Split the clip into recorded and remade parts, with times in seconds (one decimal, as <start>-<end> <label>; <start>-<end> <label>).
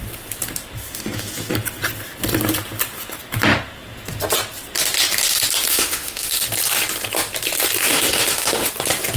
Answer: 0.0-5.7 recorded; 5.7-6.4 remade; 6.4-7.8 recorded; 7.8-8.7 remade; 8.7-9.2 recorded